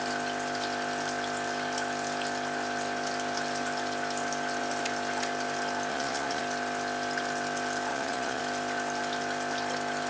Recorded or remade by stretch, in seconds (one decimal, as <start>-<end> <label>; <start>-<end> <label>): 0.0-5.9 recorded; 5.9-6.4 remade; 6.4-7.9 recorded; 7.9-8.4 remade; 8.4-10.1 recorded